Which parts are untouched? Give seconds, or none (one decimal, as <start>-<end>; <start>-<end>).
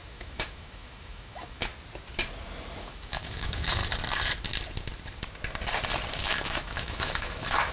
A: 1.7-2.8; 3.8-6.1